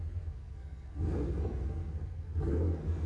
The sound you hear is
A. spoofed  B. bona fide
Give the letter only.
A